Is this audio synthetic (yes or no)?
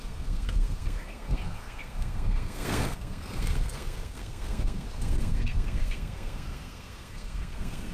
yes